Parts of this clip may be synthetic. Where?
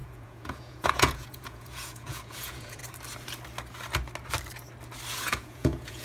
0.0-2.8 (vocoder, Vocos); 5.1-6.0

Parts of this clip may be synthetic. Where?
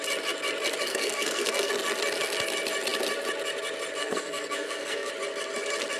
0.9-1.7 (codec, SNAC); 4.0-5.1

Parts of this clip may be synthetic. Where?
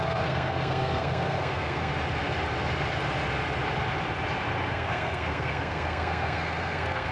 0.0-1.9 (codec, SNAC); 4.7-7.1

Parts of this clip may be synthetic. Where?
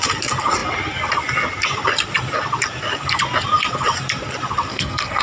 4.7-5.2 (codec, SNAC)